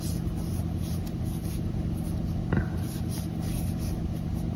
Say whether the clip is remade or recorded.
recorded